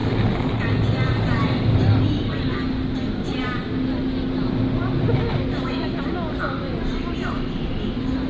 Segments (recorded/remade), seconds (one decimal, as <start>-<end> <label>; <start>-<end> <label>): 0.0-8.3 recorded